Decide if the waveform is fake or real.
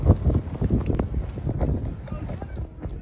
real